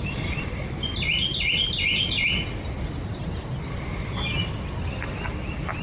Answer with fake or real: real